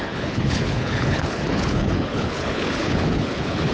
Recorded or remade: remade